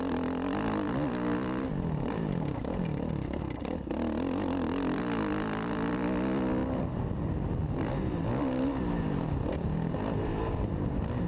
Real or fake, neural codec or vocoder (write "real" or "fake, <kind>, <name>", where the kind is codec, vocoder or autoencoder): real